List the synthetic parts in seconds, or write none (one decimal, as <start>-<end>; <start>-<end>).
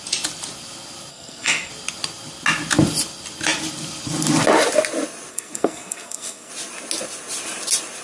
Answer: 1.1-1.7; 5.3-6.5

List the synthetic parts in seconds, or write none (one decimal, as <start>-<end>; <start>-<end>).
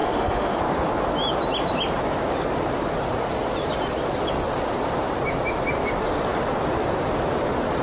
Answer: 0.0-0.6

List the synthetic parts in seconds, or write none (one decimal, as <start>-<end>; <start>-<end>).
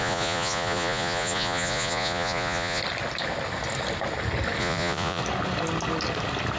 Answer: 0.0-2.8; 4.6-5.2